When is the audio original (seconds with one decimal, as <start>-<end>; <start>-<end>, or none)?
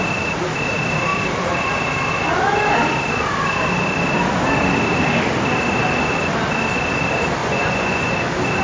0.0-7.4; 8.1-8.6